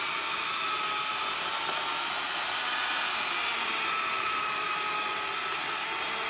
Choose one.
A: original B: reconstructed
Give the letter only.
A